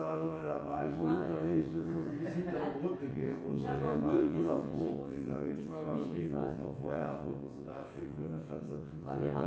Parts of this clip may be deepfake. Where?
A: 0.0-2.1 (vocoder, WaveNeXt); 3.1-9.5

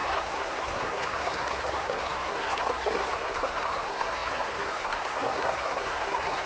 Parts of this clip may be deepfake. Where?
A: 0.0-6.5 (codec, SNAC)

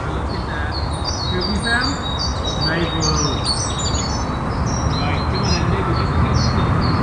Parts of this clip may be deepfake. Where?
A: none

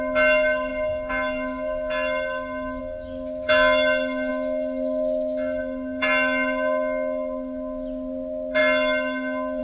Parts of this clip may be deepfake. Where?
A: none

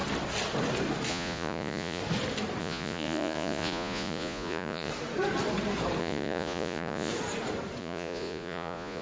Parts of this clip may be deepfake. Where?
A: 1.1-2.0 (vocoder, Vocos); 2.6-4.9; 6.0-7.1; 7.8-9.0

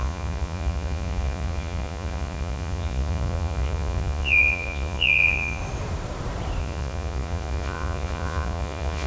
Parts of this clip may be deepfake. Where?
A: 0.0-5.6 (vocoder, Vocos); 6.6-9.1

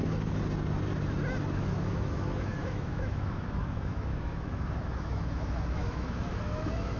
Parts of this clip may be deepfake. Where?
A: 1.5-7.0 (autoencoder, DAC-VAE)

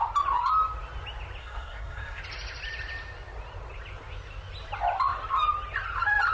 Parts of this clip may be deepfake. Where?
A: 1.4-2.2 (codec, SNAC)